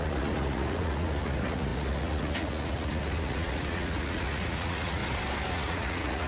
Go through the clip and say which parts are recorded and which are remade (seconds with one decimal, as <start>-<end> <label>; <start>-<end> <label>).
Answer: 0.0-5.0 remade; 5.0-5.5 recorded; 5.5-6.3 remade